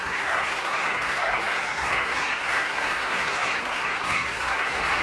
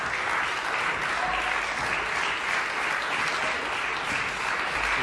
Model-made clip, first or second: first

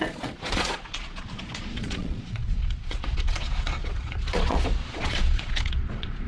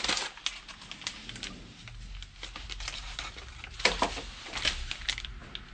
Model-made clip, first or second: first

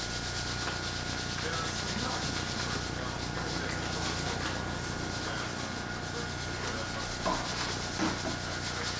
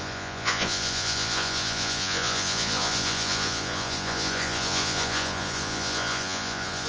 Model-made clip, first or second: second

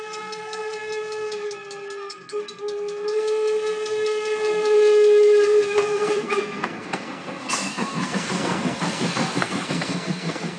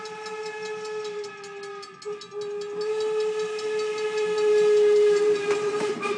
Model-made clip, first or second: first